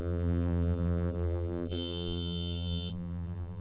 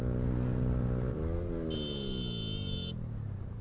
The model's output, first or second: first